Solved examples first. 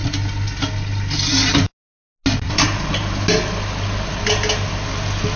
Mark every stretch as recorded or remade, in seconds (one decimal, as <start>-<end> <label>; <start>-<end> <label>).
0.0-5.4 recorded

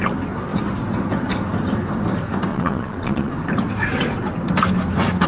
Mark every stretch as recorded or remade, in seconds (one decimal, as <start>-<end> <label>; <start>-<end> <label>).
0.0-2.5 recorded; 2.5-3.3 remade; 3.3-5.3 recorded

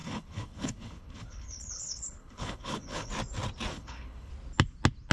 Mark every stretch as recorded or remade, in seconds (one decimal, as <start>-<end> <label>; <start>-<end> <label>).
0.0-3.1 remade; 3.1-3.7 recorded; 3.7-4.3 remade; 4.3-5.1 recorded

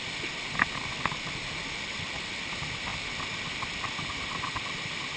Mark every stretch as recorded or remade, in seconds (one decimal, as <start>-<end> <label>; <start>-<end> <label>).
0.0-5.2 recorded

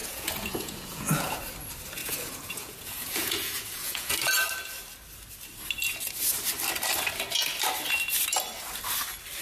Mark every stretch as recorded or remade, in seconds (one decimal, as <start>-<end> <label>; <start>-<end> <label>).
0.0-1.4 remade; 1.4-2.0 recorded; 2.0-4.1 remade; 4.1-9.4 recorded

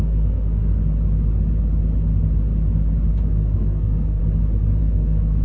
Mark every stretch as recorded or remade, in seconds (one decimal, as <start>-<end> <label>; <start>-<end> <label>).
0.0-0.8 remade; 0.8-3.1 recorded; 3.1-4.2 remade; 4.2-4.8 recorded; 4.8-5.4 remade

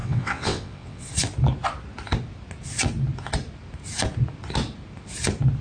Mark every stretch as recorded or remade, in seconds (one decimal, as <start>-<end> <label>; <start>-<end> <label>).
0.0-1.1 remade; 1.1-5.6 recorded

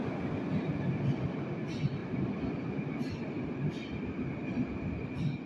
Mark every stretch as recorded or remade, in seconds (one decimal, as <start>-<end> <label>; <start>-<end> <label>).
0.0-2.0 recorded; 2.0-5.1 remade; 5.1-5.5 recorded